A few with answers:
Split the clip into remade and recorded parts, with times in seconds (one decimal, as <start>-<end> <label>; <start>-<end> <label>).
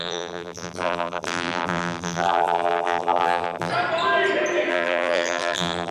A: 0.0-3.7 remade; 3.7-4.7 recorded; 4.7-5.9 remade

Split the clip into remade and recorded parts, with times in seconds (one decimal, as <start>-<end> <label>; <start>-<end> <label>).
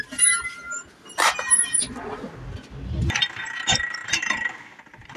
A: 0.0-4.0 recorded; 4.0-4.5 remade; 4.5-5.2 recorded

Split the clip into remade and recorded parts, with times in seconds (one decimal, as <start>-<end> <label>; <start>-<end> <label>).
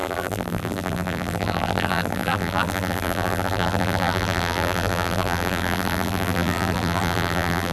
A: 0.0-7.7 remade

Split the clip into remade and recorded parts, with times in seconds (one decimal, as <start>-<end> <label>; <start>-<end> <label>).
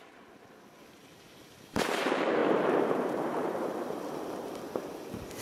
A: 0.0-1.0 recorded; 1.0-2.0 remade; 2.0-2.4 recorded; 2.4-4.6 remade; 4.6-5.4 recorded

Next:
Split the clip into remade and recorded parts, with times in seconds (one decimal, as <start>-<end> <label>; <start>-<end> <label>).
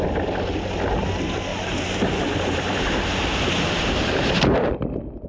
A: 0.0-1.5 recorded; 1.5-4.7 remade; 4.7-5.3 recorded